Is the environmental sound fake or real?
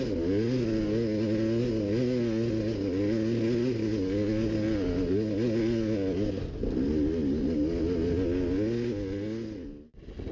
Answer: real